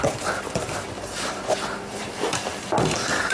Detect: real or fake fake